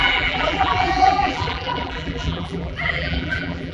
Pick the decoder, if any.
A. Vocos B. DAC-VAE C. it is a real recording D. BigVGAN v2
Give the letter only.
D